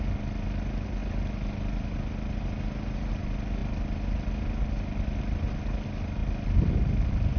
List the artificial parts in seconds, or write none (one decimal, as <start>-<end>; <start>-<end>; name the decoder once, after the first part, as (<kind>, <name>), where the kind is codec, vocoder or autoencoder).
none